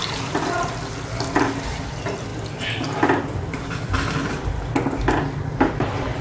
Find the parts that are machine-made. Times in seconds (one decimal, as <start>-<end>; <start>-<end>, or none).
1.9-6.2